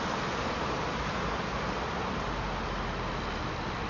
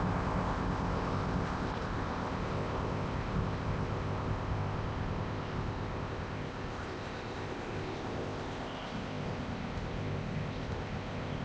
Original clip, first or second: first